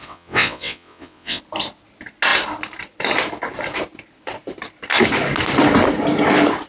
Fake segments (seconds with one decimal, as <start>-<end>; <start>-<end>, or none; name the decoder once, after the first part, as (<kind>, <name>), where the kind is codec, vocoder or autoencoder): 0.0-1.4 (vocoder, WaveNeXt)